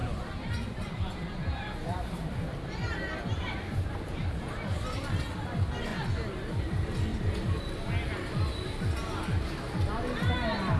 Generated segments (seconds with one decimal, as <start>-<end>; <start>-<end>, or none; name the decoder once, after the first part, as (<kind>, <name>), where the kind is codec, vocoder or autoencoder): 0.0-5.1 (vocoder, BigVGAN v2); 7.1-7.7